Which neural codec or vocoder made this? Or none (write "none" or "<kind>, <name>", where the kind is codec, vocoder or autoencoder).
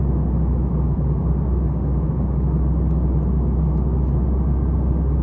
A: none